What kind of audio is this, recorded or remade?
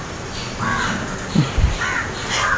recorded